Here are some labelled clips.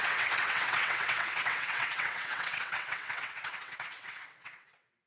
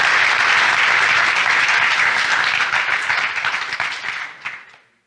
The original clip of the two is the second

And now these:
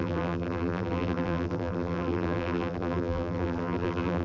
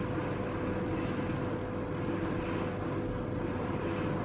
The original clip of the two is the second